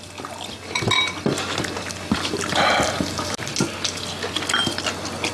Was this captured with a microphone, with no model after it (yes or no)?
yes